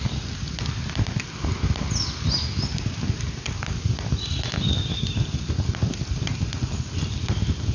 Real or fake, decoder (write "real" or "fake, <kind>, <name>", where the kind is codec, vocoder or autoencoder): real